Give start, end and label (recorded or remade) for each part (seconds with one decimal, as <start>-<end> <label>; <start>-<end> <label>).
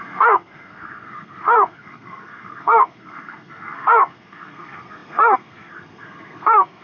0.0-6.8 remade